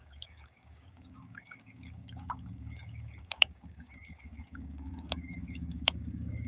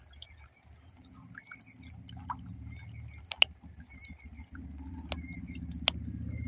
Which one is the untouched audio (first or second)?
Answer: second